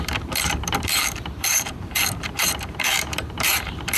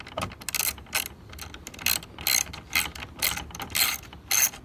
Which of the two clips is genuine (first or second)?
second